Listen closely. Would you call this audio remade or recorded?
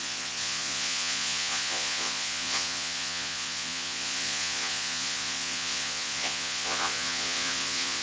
remade